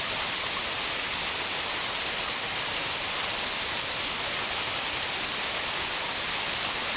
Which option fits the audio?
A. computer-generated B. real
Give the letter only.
B